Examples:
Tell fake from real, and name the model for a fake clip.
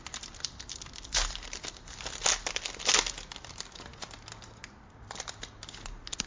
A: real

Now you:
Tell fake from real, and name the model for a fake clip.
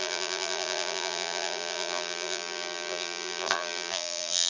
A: fake, vocoder, BigVGAN v2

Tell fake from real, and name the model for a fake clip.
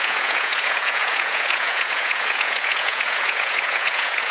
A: fake, vocoder, Vocos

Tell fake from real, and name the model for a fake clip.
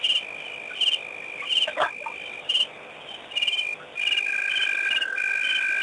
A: real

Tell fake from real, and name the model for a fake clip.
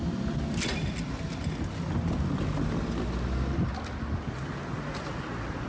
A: real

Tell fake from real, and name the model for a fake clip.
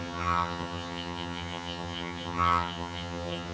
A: fake, vocoder, HiFi-GAN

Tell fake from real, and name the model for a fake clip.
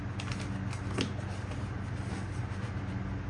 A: real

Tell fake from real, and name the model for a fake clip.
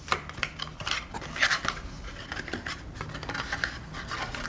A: real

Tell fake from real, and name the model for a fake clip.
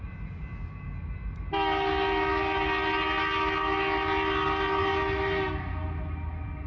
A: real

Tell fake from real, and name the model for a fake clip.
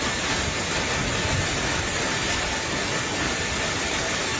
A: real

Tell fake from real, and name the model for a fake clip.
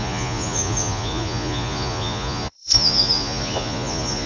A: fake, vocoder, Vocos